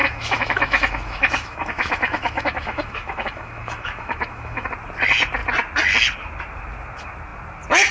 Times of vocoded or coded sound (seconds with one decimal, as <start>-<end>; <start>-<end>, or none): 0.0-4.7